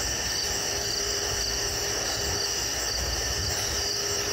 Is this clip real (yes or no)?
yes